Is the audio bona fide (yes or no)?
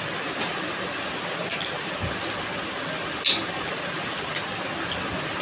yes